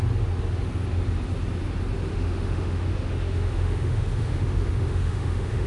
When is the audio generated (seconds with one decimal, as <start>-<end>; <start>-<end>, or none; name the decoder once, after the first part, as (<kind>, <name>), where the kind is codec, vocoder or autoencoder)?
2.1-5.7 (autoencoder, DAC-VAE)